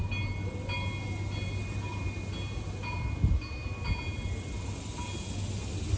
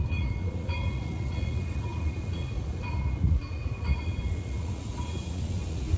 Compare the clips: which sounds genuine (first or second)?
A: first